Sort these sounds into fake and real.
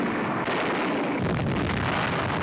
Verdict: real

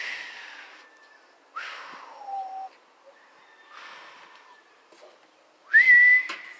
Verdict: real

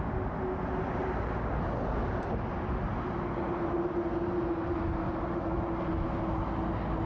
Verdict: real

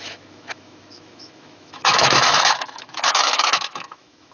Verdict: fake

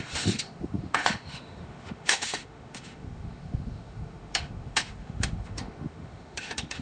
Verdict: fake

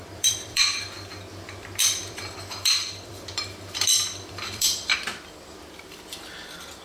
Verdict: fake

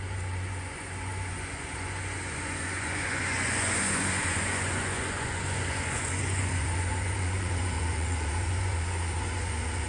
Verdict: fake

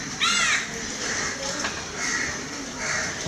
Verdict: real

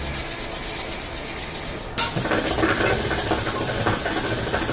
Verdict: real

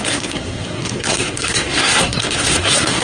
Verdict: fake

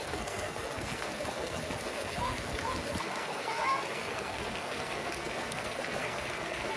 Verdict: fake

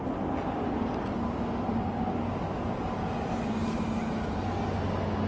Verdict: real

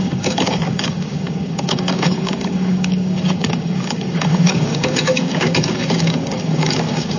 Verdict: fake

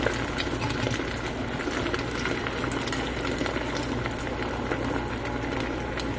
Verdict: real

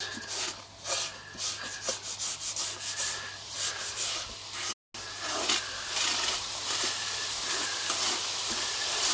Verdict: real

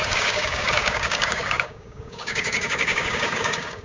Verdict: fake